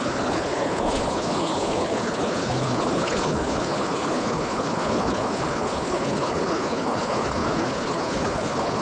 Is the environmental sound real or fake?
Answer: fake